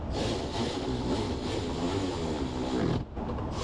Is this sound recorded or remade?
recorded